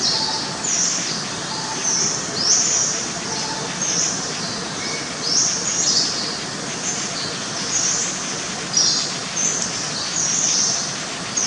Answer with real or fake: real